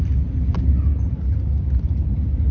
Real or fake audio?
real